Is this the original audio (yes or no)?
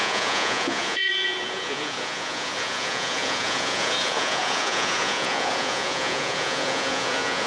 no